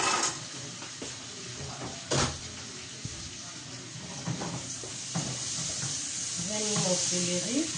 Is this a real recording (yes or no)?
yes